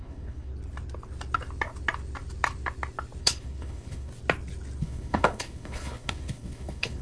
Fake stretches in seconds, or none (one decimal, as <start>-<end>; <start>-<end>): 0.0-0.5; 3.2-4.1; 4.8-7.0